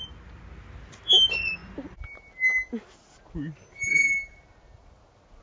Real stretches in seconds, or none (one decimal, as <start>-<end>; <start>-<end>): 0.0-5.4